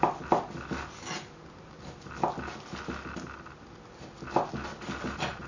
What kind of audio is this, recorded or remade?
recorded